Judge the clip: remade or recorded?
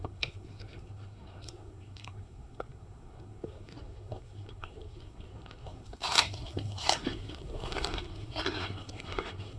remade